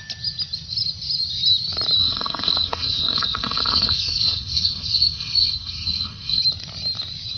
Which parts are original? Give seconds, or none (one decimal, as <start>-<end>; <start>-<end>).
0.0-2.0; 6.4-7.4